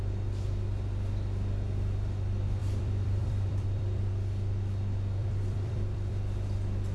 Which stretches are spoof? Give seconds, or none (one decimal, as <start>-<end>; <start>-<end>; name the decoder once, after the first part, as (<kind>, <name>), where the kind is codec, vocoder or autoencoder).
2.6-4.1 (vocoder, BigVGAN v2); 5.2-6.1